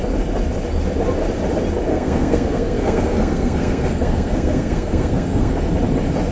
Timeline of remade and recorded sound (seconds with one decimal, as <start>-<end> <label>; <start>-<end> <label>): 0.0-1.9 recorded; 1.9-5.7 remade; 5.7-6.3 recorded

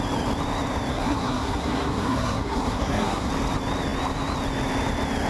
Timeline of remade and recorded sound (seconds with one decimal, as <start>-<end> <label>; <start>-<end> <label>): 0.0-0.9 recorded; 0.9-3.3 remade; 3.3-5.3 recorded

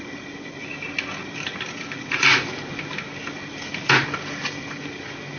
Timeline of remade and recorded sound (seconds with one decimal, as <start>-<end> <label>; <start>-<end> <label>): 0.0-5.4 recorded

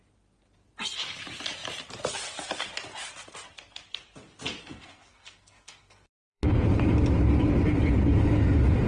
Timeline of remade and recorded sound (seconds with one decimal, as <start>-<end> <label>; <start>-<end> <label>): 0.0-4.6 recorded; 4.6-6.5 remade; 6.5-8.9 recorded

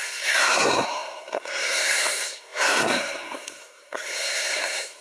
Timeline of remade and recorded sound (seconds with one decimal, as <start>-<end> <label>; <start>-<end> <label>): 0.0-5.0 remade